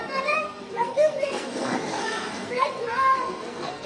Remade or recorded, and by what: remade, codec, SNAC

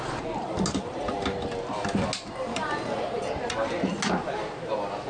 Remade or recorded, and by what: recorded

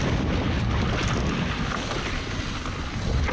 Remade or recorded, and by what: recorded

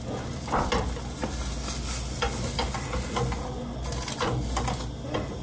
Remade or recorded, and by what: recorded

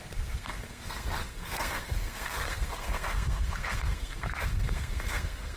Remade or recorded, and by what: remade, codec, SNAC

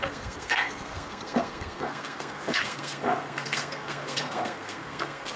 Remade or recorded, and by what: remade, codec, SNAC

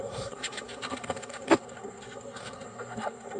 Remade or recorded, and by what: remade, codec, SNAC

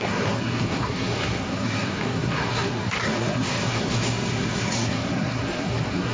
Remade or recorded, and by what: remade, codec, SNAC